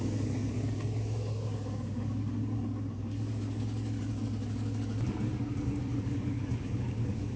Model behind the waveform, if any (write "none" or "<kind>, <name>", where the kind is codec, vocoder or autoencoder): codec, DAC